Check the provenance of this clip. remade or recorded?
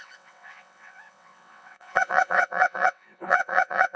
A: remade